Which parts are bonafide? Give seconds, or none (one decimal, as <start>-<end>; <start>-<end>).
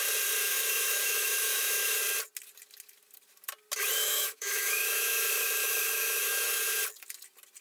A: 0.0-0.4; 2.0-4.0; 6.8-7.6